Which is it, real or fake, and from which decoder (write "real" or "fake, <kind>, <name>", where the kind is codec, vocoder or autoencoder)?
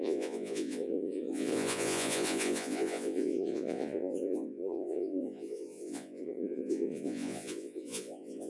fake, vocoder, Vocos